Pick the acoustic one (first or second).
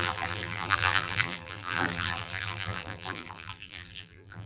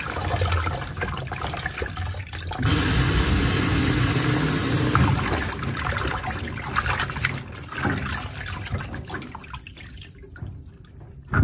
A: second